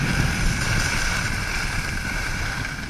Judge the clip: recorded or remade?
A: remade